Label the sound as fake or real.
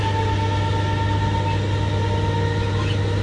real